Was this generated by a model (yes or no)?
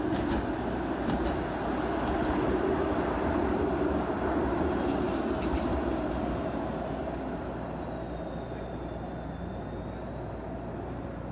no